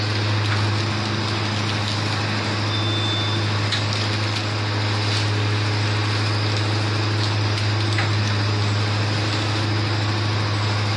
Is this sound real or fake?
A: real